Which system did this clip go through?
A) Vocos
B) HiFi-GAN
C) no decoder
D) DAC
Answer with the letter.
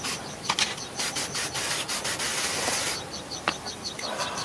C